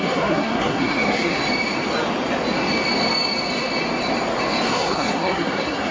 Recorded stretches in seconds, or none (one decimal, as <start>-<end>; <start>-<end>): 1.4-4.7